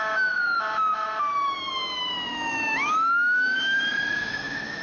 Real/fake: fake